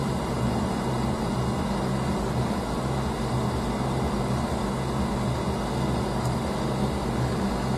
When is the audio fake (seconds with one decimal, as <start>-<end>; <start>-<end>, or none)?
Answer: 0.0-1.3